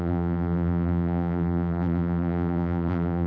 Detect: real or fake fake